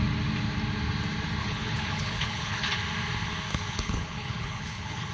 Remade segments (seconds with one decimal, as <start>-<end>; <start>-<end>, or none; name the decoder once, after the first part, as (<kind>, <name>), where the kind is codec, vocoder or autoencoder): 1.4-2.7 (codec, HILCodec); 3.5-5.1